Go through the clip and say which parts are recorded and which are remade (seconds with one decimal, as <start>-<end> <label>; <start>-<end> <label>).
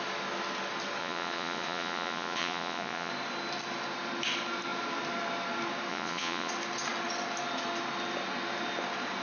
0.0-1.0 recorded; 1.0-3.1 remade; 3.1-5.9 recorded; 5.9-6.5 remade; 6.5-9.2 recorded